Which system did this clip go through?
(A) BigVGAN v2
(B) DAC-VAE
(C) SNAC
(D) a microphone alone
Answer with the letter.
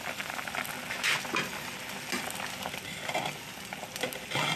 D